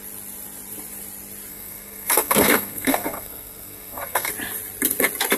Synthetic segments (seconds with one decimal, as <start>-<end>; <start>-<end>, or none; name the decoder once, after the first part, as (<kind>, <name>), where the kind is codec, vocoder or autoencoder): 1.5-4.3 (codec, SNAC)